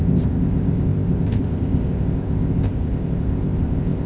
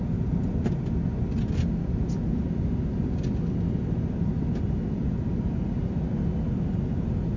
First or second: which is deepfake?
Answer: first